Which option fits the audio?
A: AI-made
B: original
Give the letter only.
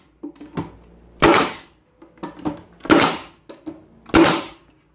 B